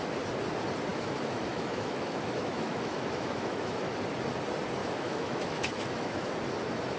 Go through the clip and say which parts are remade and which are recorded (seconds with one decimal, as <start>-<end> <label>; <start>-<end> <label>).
0.0-0.9 recorded; 0.9-3.9 remade; 3.9-4.8 recorded; 4.8-6.3 remade; 6.3-7.0 recorded